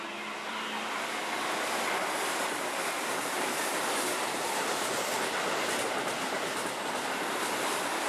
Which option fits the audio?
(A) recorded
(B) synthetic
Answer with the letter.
A